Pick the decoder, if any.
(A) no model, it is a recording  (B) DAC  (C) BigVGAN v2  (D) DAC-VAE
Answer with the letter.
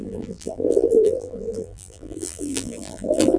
C